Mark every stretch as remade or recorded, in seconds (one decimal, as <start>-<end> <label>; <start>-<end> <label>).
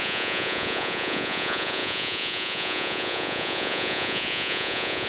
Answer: 0.0-5.1 remade